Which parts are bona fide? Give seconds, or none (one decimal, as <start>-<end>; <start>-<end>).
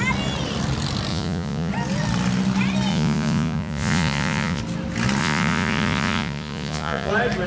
0.0-1.1; 1.7-2.9; 4.6-5.2; 7.1-7.5